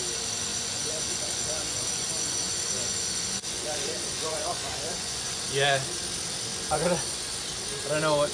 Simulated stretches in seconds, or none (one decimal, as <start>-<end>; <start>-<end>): 0.5-5.4; 6.5-7.4